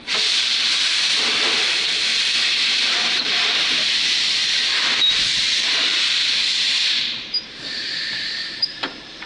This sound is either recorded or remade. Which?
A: remade